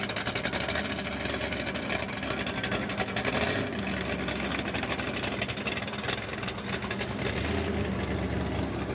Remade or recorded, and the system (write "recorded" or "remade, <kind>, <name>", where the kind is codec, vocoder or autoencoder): recorded